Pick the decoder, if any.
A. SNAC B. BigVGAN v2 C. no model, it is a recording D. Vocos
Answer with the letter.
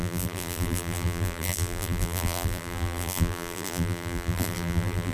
B